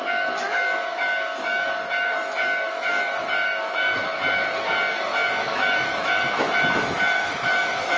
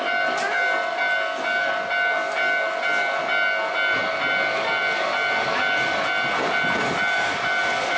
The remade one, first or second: first